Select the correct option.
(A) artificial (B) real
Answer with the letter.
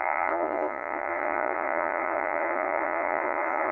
A